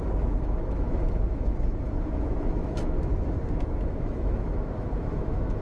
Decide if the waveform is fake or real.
fake